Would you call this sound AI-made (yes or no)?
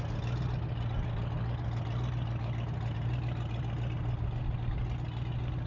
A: no